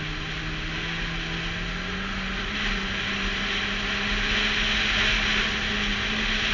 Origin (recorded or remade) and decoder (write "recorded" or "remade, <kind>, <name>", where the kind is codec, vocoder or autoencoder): recorded